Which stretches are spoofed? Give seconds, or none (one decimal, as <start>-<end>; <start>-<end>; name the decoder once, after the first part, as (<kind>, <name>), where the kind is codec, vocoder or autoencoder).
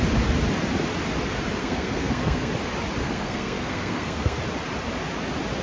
1.6-2.5 (codec, SNAC); 3.0-4.4